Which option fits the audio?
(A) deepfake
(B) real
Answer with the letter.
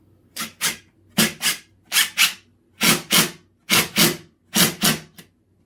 B